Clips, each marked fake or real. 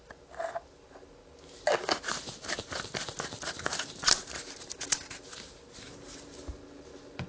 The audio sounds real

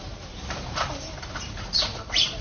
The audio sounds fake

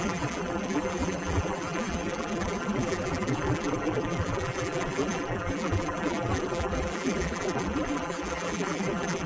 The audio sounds fake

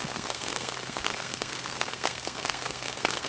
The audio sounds fake